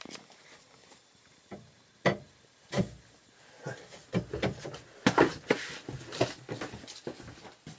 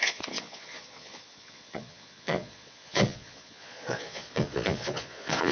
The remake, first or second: second